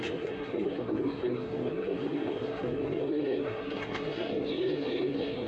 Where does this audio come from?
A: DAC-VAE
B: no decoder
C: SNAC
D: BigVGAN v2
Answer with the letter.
C